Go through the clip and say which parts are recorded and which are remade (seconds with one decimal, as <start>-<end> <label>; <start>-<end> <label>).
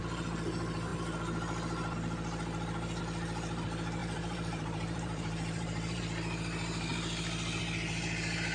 0.0-4.0 recorded; 4.0-6.0 remade; 6.0-8.5 recorded